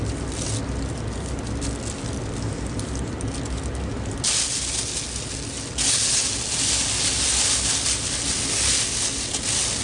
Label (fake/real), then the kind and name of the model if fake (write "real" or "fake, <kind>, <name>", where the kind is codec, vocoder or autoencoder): real